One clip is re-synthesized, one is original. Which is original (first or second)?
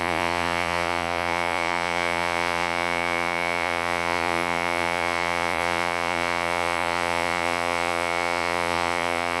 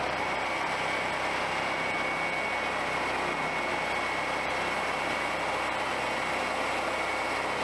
second